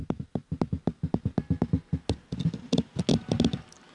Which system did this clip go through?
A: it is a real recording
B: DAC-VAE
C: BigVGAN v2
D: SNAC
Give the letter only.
A